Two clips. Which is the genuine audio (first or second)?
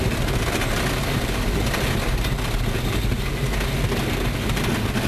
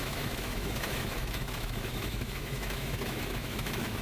first